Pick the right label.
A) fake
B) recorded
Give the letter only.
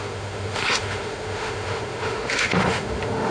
A